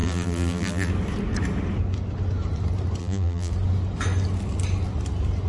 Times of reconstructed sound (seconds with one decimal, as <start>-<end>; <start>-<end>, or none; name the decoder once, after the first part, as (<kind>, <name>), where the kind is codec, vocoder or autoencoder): 0.0-0.9 (vocoder, BigVGAN v2); 3.0-3.5